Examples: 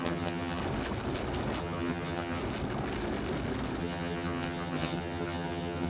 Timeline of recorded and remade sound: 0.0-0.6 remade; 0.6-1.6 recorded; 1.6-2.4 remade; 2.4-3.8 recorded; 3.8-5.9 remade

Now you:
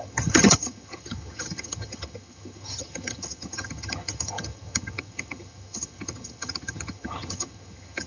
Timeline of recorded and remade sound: 0.0-8.1 remade

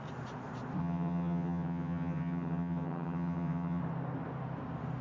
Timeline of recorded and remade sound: 0.0-0.8 recorded; 0.8-3.8 remade; 3.8-5.0 recorded

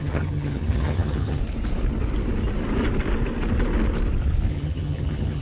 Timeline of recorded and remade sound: 0.0-1.4 remade; 1.4-4.5 recorded; 4.5-5.4 remade